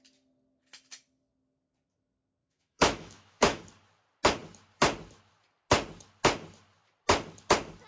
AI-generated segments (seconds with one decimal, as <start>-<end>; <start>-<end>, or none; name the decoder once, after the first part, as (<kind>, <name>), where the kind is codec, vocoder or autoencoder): 2.4-3.6 (autoencoder, DAC-VAE)

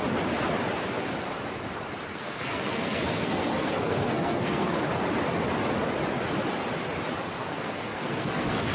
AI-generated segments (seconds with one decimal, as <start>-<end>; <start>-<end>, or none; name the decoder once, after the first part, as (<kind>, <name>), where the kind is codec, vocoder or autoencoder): 2.1-4.8 (codec, SNAC); 7.4-8.7

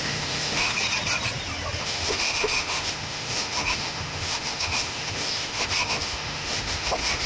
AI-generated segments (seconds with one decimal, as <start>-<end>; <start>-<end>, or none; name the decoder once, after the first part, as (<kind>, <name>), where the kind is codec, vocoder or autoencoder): 0.0-0.7 (autoencoder, DAC-VAE); 1.8-7.3